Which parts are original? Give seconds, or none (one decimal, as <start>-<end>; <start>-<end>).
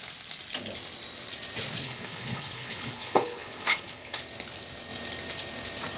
0.0-1.8; 4.2-6.0